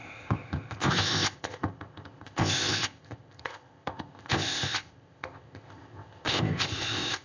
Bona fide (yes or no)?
no